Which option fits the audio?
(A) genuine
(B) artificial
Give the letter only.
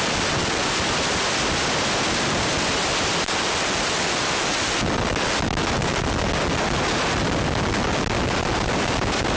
A